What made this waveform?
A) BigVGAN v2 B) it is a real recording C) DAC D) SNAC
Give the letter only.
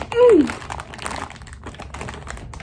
B